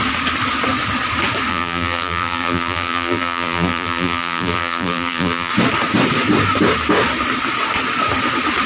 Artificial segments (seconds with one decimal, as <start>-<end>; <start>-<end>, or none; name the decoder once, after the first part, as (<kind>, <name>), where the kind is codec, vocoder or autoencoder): 1.5-5.5 (vocoder, BigVGAN v2)